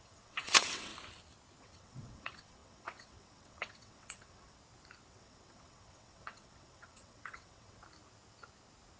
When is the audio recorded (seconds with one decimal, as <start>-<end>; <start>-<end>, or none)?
0.9-1.6; 4.6-5.1; 7.8-9.0